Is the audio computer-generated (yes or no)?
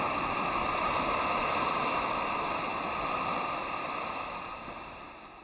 no